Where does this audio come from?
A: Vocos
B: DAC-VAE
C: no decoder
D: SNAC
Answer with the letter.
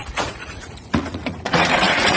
A